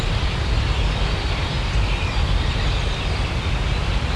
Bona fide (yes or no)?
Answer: yes